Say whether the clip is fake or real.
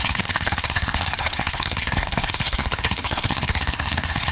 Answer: fake